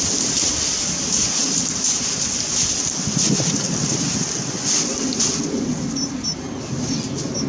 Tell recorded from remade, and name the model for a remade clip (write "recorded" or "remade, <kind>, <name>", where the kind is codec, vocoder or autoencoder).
recorded